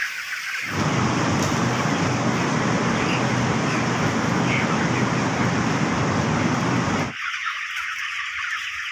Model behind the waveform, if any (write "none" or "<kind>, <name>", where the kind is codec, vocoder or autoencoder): none